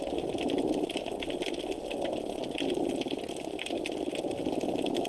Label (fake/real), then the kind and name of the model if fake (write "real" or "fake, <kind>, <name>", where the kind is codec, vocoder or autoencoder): real